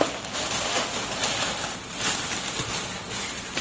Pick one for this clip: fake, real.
real